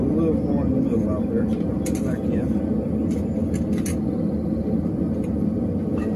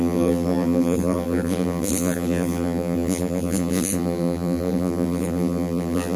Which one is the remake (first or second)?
second